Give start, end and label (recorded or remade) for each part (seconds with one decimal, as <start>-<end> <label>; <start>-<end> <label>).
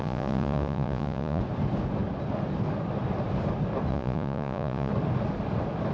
0.0-1.4 remade; 1.4-3.9 recorded; 3.9-4.9 remade; 4.9-5.9 recorded